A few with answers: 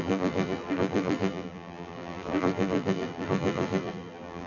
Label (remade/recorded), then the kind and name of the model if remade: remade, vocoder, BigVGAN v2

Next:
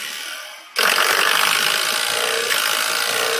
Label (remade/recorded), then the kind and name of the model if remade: recorded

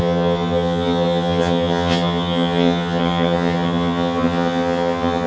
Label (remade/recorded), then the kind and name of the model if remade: remade, vocoder, HiFi-GAN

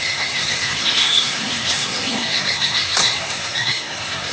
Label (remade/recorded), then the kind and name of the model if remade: remade, codec, SNAC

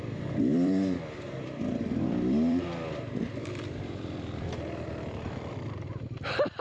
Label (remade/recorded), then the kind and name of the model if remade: remade, vocoder, BigVGAN v2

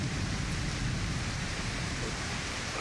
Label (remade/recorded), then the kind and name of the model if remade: remade, vocoder, BigVGAN v2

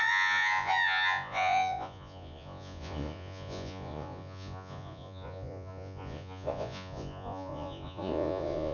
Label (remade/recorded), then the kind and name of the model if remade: remade, vocoder, Vocos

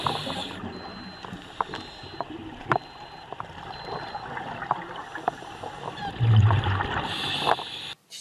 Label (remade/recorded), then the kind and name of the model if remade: recorded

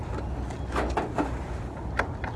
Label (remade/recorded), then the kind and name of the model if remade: recorded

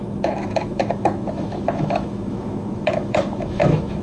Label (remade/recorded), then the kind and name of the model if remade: remade, autoencoder, DAC-VAE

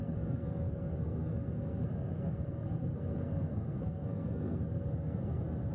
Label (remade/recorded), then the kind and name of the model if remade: remade, codec, SNAC